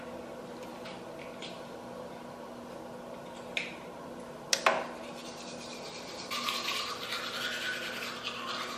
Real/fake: real